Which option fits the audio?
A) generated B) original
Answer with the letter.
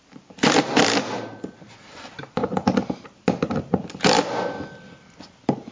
B